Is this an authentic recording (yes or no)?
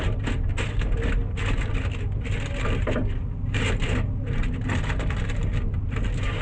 yes